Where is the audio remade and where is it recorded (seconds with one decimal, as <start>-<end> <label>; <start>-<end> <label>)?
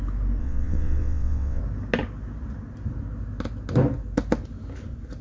0.0-0.4 recorded; 0.4-1.6 remade; 1.6-5.2 recorded